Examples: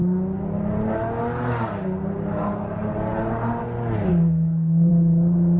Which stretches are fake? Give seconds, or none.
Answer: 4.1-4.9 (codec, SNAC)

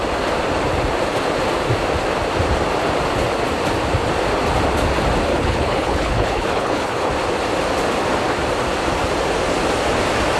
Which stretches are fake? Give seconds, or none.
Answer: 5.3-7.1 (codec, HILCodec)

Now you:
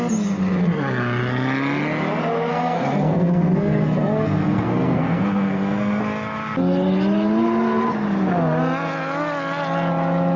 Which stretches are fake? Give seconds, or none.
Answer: 2.5-6.0 (codec, SNAC)

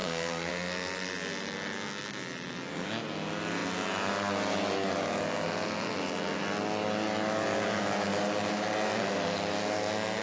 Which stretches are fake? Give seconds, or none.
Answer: 0.0-0.5 (codec, SNAC)

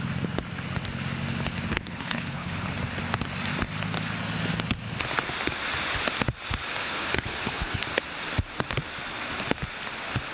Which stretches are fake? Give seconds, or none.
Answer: 1.7-2.8 (codec, HILCodec); 6.8-7.8

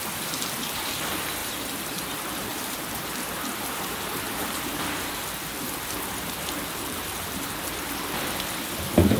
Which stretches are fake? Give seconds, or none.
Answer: 1.4-2.0 (vocoder, BigVGAN v2); 2.5-5.2

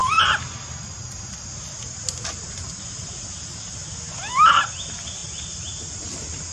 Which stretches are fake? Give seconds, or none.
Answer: none